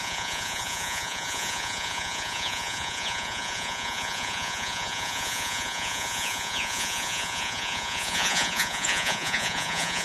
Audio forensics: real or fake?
fake